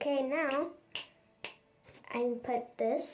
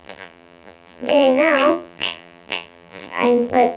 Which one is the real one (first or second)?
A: first